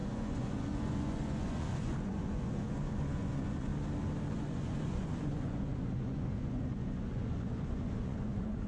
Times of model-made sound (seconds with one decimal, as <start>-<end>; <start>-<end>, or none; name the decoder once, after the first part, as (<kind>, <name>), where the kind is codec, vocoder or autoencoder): 0.0-3.7 (vocoder, Vocos); 4.3-8.7